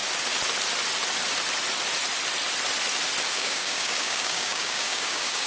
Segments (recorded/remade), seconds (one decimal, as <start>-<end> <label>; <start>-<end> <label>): 0.0-3.3 recorded; 3.3-5.5 remade